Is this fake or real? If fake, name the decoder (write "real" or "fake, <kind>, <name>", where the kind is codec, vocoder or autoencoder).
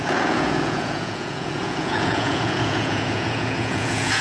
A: fake, vocoder, Vocos